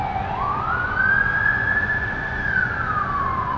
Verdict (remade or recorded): remade